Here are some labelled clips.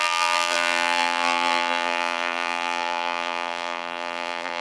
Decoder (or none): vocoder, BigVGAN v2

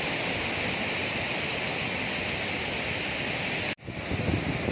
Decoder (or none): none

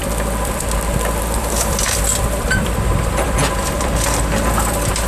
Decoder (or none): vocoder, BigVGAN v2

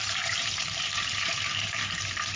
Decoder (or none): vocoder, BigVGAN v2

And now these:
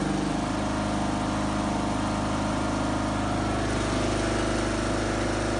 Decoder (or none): none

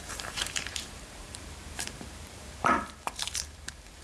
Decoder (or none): vocoder, BigVGAN v2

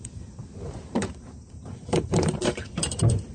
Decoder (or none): vocoder, BigVGAN v2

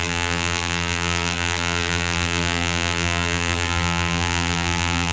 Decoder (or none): vocoder, BigVGAN v2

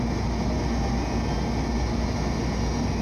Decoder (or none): none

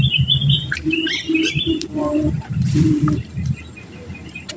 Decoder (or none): vocoder, BigVGAN v2